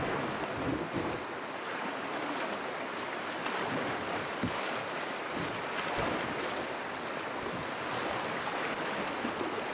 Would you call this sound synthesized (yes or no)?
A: no